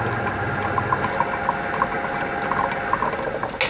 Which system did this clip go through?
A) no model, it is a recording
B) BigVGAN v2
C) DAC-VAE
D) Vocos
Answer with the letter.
A